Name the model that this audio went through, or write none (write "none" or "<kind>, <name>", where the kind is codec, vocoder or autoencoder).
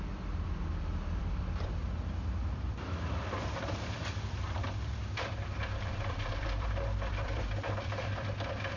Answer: vocoder, BigVGAN v2